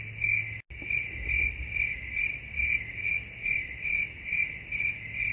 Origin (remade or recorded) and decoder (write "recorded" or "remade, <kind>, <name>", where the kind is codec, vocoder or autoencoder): recorded